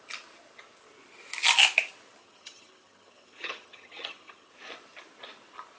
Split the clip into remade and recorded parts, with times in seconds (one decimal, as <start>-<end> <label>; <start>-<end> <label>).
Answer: 0.0-2.2 recorded; 2.2-4.5 remade; 4.5-5.8 recorded